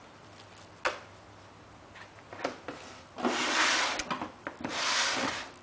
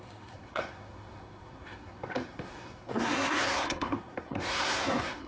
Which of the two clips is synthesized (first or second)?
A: second